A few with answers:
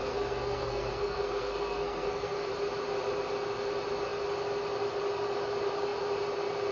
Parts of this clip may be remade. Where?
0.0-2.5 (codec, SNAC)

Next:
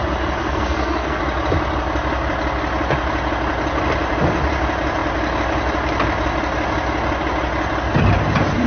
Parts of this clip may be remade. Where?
0.4-1.2 (codec, SNAC)